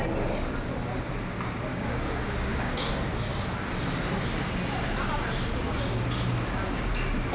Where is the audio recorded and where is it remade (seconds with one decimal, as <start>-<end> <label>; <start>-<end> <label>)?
0.0-1.7 recorded; 1.7-2.9 remade; 2.9-7.3 recorded